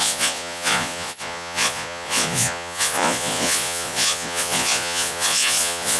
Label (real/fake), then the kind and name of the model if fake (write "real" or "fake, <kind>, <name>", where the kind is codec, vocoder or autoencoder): fake, vocoder, Vocos